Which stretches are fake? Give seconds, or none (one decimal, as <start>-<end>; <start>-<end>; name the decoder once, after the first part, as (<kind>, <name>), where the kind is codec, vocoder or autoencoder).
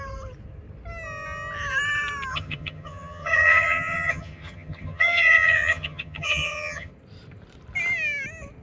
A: 2.3-6.9 (vocoder, HiFi-GAN)